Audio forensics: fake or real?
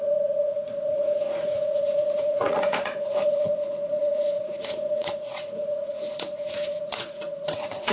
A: fake